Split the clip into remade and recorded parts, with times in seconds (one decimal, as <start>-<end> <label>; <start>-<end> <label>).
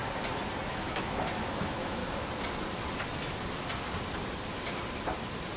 0.0-0.7 recorded; 0.7-2.0 remade; 2.0-5.6 recorded